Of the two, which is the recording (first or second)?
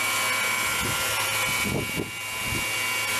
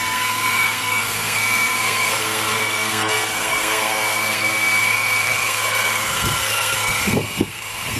first